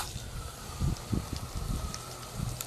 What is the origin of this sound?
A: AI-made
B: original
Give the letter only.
A